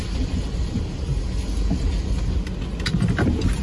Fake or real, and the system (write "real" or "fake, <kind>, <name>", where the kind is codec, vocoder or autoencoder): real